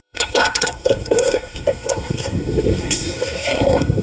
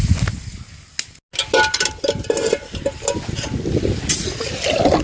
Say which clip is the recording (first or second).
second